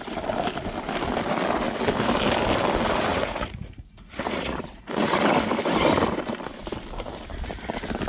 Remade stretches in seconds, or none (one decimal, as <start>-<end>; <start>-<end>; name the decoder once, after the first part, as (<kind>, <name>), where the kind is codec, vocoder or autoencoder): 3.1-5.2 (vocoder, Vocos)